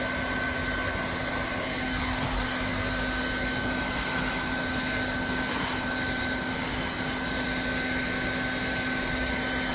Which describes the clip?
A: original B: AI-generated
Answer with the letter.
A